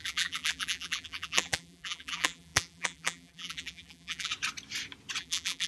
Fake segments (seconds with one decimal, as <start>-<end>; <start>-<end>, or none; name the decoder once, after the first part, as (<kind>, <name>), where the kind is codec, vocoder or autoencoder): 0.0-4.3 (vocoder, BigVGAN v2); 5.2-5.7